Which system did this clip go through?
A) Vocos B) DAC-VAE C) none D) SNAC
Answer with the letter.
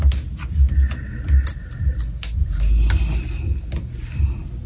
C